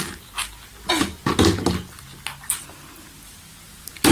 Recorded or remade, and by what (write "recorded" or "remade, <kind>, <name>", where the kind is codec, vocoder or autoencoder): recorded